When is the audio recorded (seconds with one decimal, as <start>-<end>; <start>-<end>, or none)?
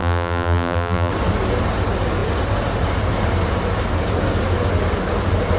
1.1-5.6